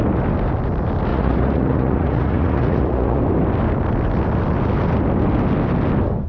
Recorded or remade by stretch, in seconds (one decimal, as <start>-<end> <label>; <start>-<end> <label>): 0.0-1.1 recorded; 1.1-3.2 remade; 3.2-6.3 recorded